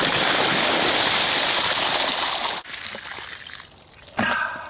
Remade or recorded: recorded